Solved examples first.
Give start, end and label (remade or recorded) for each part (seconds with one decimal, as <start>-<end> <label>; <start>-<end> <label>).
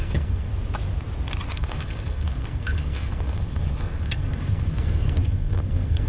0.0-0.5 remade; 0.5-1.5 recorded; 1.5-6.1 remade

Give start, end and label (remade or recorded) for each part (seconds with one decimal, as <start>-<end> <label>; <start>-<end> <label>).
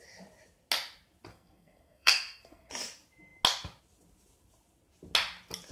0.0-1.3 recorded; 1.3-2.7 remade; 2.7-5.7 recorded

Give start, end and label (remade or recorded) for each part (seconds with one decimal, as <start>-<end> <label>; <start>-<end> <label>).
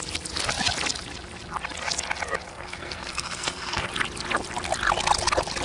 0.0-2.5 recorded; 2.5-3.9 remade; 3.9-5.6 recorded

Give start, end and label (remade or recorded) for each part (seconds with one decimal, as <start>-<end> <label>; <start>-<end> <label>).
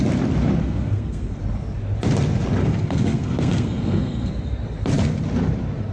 0.0-0.6 recorded; 0.6-1.4 remade; 1.4-2.6 recorded; 2.6-4.3 remade; 4.3-5.9 recorded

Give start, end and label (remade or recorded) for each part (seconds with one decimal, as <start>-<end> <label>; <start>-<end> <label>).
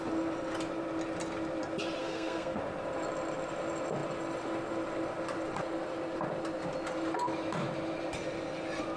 0.0-2.0 recorded; 2.0-2.6 remade; 2.6-9.0 recorded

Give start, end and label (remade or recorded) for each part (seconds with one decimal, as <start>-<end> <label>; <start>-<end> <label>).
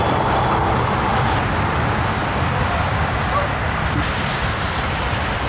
0.0-5.5 recorded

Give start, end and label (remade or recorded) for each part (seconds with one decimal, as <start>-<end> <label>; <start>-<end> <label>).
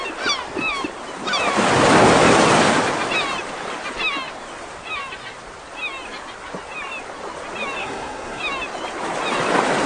0.0-7.8 recorded; 7.8-8.4 remade; 8.4-9.9 recorded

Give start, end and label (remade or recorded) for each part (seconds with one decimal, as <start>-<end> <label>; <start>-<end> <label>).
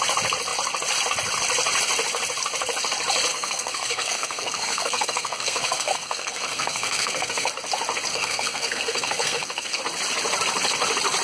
0.0-3.3 recorded; 3.3-7.5 remade; 7.5-8.1 recorded; 8.1-9.8 remade; 9.8-11.2 recorded